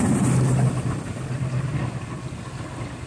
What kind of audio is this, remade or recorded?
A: recorded